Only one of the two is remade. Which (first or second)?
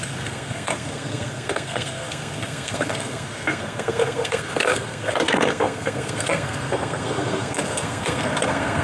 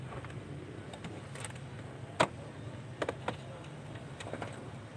first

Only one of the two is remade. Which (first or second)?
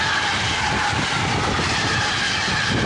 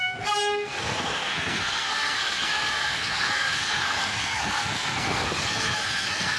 second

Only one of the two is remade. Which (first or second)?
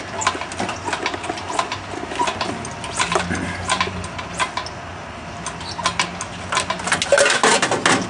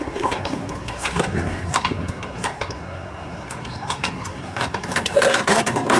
second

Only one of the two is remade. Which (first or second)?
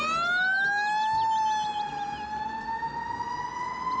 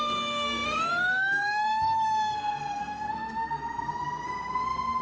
second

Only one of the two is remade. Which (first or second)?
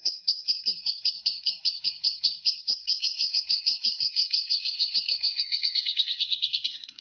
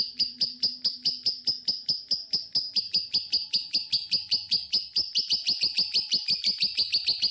first